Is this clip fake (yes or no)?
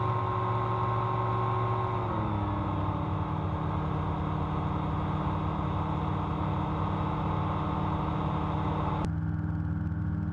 no